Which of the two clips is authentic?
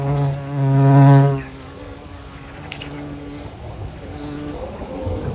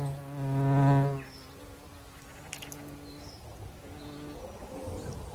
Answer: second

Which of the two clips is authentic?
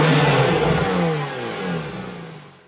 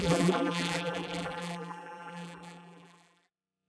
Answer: first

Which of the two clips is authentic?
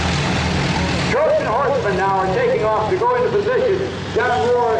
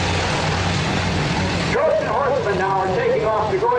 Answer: first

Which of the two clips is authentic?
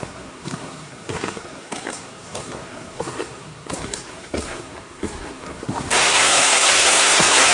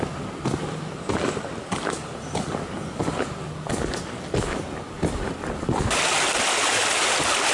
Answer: second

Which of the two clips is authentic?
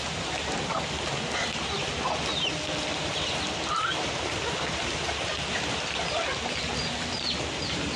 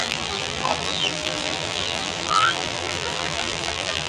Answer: first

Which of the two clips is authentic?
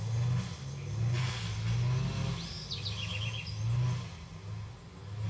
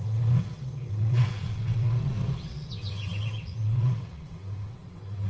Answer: first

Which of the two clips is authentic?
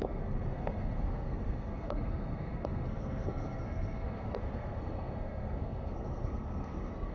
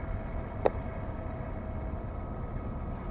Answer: second